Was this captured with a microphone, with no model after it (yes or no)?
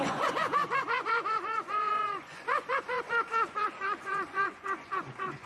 no